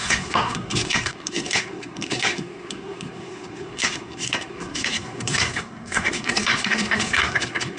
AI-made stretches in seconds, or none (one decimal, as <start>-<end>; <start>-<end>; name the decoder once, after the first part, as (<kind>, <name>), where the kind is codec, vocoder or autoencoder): 0.0-7.8 (codec, SNAC)